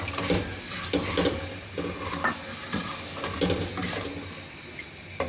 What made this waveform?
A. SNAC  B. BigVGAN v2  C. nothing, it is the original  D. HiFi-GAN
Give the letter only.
C